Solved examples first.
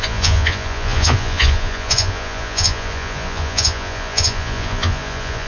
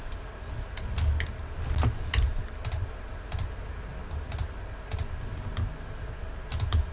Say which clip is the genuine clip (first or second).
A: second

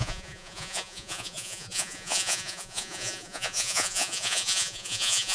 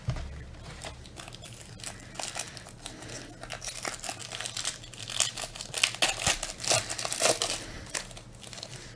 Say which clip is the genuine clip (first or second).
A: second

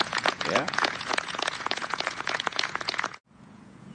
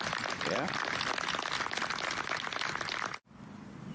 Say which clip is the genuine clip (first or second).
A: second